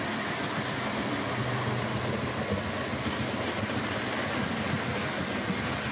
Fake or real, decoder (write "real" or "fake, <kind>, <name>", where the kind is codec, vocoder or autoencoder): real